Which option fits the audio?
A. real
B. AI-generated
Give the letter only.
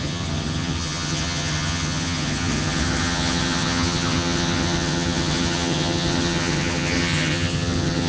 B